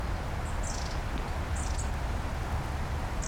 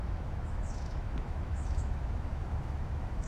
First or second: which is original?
first